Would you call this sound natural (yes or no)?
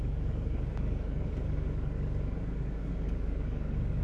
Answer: no